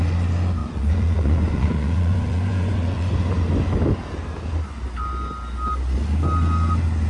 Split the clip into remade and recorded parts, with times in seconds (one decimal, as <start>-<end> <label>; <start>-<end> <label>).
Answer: 0.0-0.6 recorded; 0.6-3.1 remade; 3.1-7.1 recorded